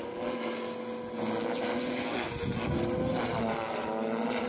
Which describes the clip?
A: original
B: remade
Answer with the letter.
A